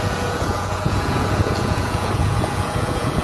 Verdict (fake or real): fake